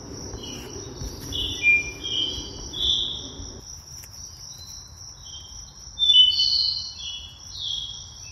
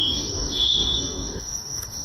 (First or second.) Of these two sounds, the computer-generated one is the second